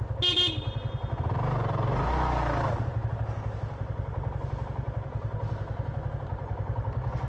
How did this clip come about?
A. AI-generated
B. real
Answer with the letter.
B